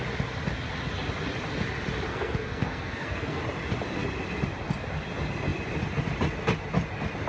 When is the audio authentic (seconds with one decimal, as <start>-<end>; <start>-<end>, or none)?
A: 0.0-2.1; 3.4-7.3